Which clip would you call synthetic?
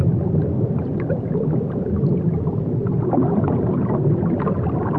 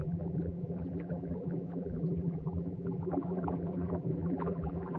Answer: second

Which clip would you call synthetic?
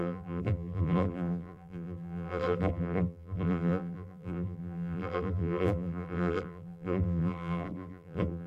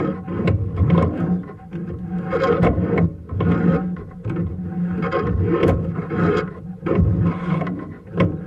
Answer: first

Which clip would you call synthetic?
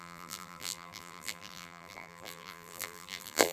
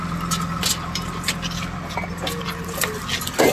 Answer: first